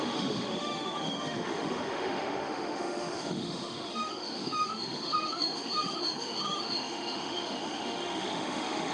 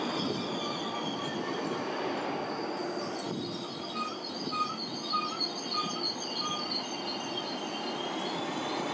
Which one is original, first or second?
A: second